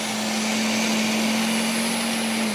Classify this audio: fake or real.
real